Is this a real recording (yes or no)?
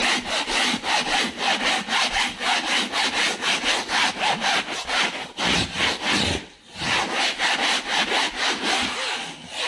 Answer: yes